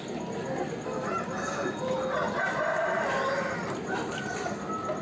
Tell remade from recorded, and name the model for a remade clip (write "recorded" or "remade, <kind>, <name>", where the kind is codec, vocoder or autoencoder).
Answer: recorded